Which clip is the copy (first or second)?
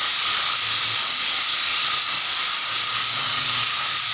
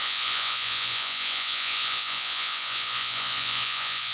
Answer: second